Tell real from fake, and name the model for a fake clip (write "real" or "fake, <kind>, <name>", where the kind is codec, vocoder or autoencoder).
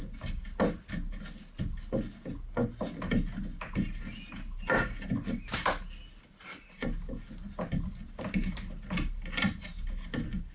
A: real